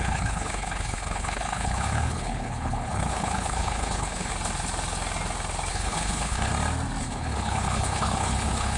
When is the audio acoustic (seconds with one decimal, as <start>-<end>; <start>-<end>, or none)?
4.3-5.7; 6.5-7.0